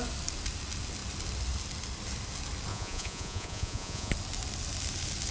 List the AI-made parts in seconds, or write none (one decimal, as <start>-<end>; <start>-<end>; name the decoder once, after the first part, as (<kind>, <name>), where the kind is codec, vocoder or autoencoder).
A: 2.7-4.1 (vocoder, Vocos)